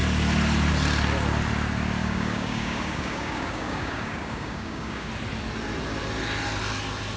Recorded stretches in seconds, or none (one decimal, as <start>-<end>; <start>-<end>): 0.0-2.0; 5.1-7.2